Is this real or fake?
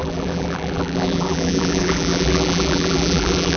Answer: fake